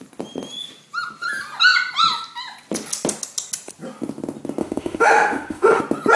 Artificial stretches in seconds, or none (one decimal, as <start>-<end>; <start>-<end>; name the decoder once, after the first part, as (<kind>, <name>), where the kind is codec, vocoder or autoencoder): 4.6-5.8 (autoencoder, DAC-VAE)